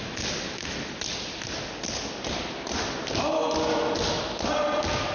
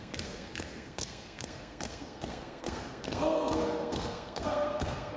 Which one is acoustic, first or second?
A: first